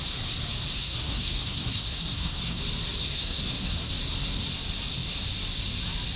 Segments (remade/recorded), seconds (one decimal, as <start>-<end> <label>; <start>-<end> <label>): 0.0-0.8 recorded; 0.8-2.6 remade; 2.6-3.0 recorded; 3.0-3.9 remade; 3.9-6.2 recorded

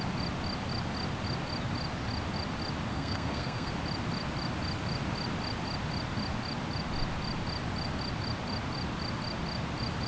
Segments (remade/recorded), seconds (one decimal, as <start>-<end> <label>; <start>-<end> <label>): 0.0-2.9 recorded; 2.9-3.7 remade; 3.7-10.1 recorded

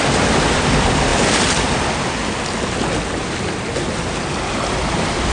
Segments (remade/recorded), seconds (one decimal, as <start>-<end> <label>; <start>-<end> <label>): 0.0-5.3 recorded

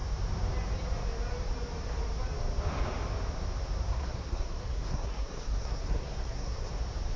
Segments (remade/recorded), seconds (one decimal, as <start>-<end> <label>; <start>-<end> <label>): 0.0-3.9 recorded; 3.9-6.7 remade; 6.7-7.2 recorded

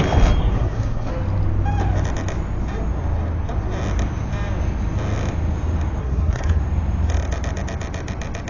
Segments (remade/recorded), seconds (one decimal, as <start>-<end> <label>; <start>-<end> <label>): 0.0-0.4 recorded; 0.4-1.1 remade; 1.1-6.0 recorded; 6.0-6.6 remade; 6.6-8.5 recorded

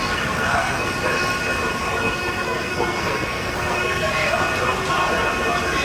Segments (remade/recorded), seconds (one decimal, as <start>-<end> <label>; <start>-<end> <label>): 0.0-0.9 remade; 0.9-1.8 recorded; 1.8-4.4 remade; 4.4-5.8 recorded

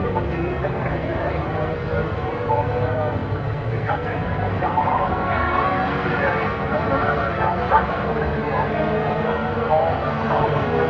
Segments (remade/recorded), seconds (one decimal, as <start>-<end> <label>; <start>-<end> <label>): 0.0-10.9 remade